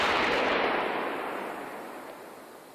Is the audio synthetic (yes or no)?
no